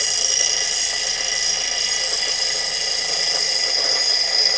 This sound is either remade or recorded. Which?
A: recorded